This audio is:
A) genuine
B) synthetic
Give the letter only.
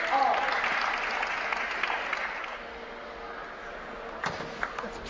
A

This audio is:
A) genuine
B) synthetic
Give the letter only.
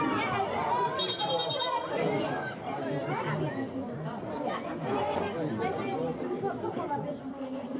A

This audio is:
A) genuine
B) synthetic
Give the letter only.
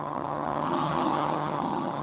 B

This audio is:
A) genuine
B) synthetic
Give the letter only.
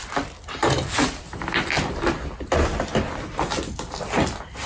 A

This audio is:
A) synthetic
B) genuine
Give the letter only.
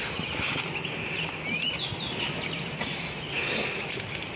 B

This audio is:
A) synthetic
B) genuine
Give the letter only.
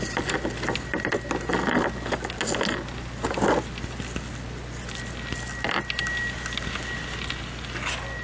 B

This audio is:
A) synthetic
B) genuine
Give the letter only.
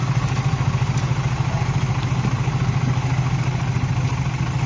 B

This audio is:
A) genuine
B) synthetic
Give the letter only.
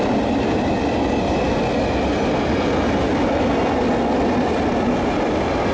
A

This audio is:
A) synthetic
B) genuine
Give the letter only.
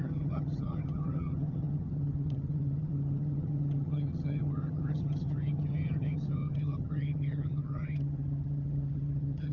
A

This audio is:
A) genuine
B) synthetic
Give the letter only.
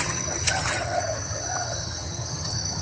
B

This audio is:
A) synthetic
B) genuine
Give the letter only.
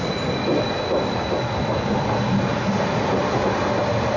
B